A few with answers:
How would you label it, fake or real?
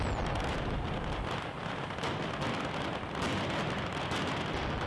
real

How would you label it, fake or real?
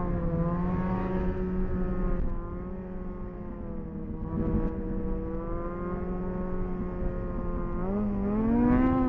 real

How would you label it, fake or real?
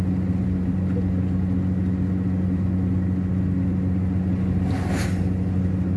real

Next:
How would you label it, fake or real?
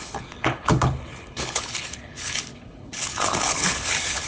fake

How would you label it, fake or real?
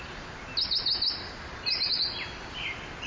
real